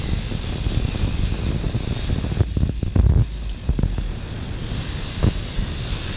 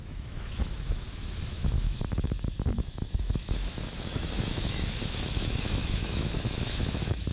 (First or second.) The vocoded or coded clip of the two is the second